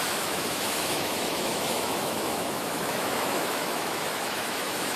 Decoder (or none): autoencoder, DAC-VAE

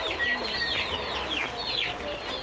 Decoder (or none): none